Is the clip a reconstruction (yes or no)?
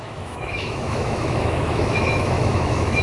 yes